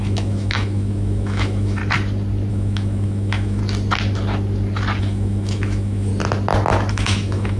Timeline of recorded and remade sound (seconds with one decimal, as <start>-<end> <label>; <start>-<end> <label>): 0.0-1.8 remade; 1.8-2.5 recorded; 2.5-3.6 remade; 3.6-5.0 recorded; 5.0-6.1 remade; 6.1-6.9 recorded; 6.9-7.6 remade

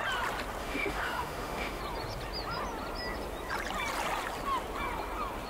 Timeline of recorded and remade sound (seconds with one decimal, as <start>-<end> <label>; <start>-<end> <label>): 0.0-0.6 recorded; 0.6-1.8 remade; 1.8-5.5 recorded

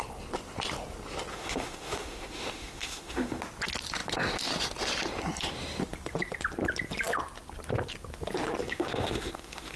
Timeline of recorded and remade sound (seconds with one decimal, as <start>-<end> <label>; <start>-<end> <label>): 0.0-1.3 recorded; 1.3-3.4 remade; 3.4-8.6 recorded; 8.6-9.8 remade

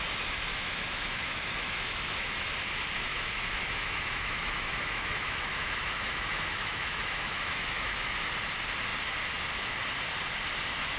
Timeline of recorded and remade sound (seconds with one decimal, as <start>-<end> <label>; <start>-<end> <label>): 0.0-0.5 recorded; 0.5-2.5 remade; 2.5-3.1 recorded; 3.1-8.1 remade; 8.1-11.0 recorded